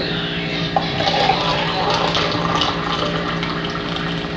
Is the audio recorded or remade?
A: recorded